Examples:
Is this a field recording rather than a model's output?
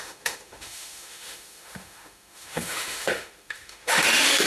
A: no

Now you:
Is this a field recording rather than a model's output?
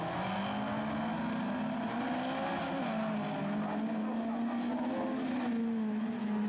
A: yes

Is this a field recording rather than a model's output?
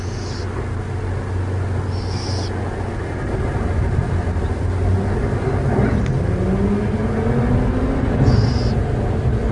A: yes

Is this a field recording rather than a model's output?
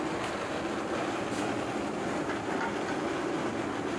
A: no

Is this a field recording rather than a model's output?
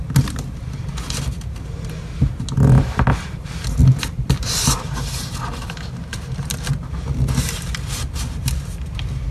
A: yes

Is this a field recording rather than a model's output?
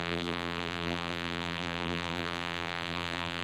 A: no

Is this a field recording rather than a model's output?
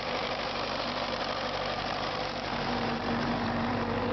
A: no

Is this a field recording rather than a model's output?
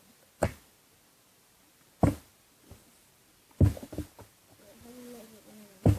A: yes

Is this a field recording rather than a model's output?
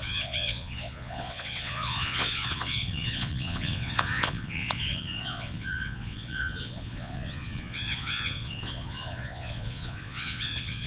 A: no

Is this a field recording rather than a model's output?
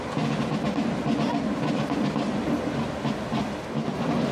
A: yes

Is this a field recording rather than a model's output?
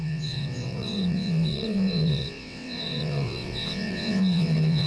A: no